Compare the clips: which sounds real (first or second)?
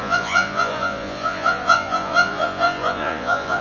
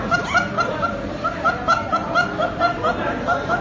second